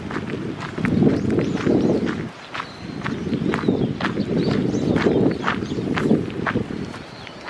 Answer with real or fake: real